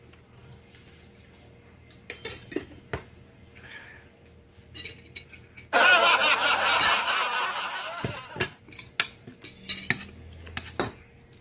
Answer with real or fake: real